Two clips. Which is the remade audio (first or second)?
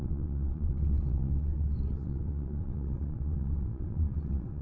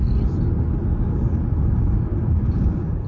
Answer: first